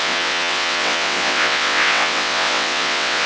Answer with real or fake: fake